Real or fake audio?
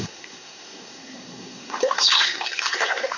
fake